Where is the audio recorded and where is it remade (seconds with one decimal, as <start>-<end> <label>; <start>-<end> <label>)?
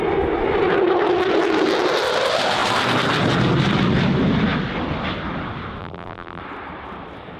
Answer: 0.0-5.8 recorded; 5.8-6.4 remade; 6.4-7.4 recorded